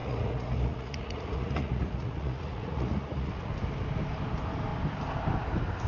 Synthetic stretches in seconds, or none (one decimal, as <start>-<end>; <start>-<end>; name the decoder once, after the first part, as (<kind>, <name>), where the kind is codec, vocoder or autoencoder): 0.0-3.5 (vocoder, Vocos)